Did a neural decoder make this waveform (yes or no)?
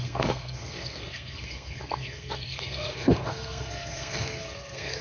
yes